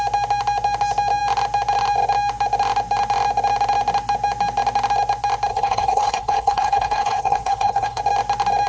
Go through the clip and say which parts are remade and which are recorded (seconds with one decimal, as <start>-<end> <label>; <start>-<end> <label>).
0.0-5.5 recorded; 5.5-8.0 remade; 8.0-8.7 recorded